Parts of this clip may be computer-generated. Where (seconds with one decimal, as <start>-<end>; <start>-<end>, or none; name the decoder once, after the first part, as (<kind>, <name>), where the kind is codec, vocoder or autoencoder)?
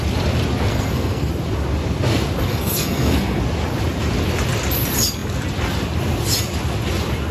0.7-1.3 (codec, SNAC); 2.5-3.4